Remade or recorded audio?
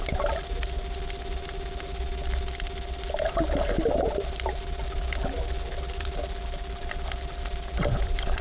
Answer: recorded